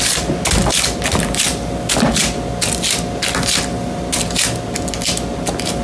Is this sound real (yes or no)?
yes